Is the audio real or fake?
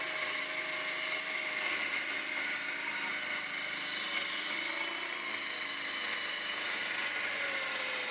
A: real